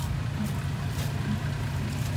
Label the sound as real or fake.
real